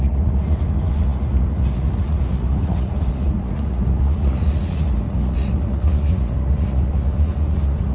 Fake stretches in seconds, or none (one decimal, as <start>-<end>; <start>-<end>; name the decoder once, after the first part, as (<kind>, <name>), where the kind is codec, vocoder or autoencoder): 0.0-7.9 (vocoder, Vocos)